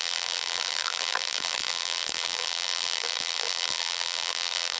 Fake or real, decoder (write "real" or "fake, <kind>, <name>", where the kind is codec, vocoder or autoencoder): fake, vocoder, BigVGAN v2